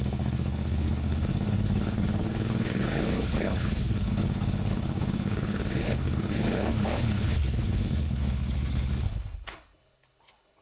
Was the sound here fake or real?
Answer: fake